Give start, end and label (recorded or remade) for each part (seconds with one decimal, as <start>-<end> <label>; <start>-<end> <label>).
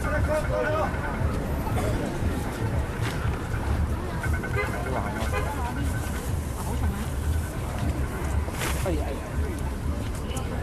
0.0-4.8 remade; 4.8-5.9 recorded; 5.9-8.2 remade; 8.2-8.8 recorded; 8.8-10.6 remade